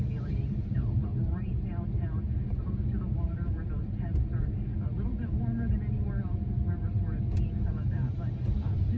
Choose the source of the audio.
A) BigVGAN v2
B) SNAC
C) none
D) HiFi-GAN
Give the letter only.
C